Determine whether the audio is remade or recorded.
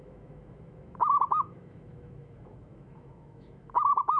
remade